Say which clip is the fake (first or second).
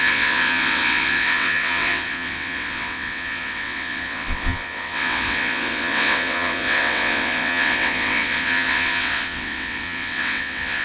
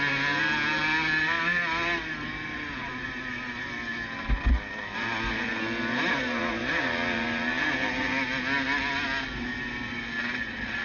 first